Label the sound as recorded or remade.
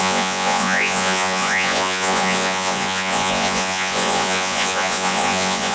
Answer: remade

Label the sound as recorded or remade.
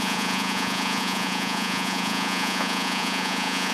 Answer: remade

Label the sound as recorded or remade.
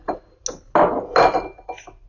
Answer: recorded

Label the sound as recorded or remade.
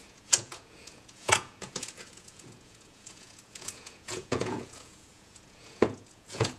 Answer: remade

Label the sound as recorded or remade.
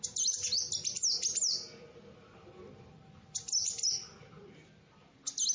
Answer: recorded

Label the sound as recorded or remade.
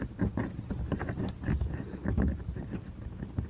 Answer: recorded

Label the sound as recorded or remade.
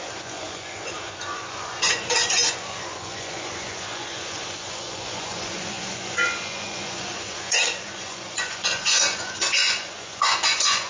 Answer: remade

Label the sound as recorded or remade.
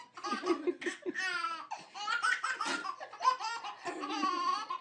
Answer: recorded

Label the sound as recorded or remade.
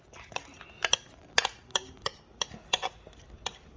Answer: recorded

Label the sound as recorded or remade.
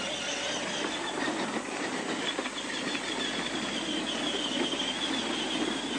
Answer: recorded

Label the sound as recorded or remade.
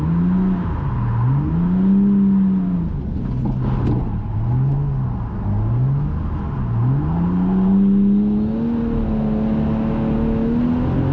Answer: recorded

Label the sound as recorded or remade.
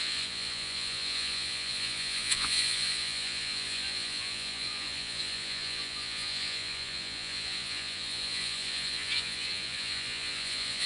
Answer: remade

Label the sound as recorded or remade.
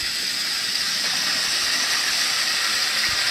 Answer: recorded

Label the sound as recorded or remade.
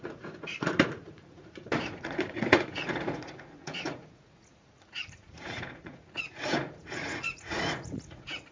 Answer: remade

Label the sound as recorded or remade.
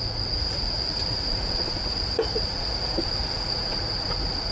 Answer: remade